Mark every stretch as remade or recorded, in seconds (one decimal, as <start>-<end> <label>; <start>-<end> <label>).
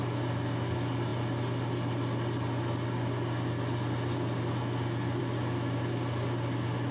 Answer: 0.0-6.9 recorded